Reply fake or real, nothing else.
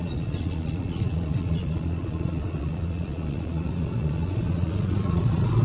fake